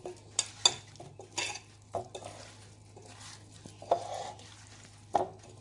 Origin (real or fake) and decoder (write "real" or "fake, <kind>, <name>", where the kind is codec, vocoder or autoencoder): real